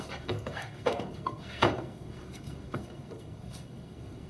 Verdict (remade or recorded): remade